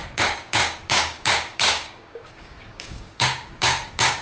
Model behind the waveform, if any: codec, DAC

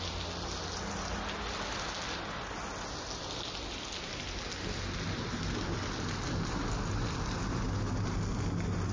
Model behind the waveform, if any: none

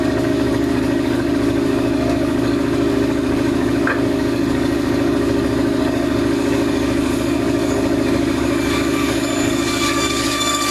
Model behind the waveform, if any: codec, DAC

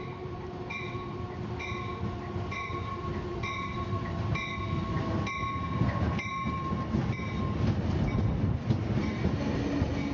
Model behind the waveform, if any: none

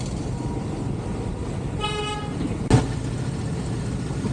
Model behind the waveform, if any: none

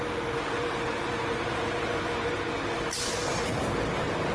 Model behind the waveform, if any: none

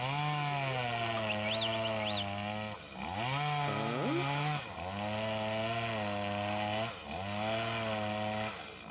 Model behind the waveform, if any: none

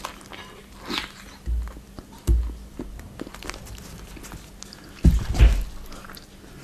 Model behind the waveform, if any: none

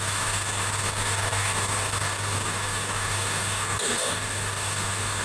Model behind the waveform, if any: codec, DAC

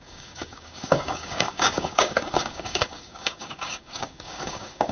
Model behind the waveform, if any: codec, DAC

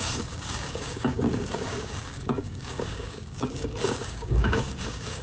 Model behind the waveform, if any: codec, DAC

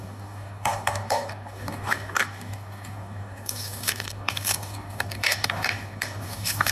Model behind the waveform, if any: codec, DAC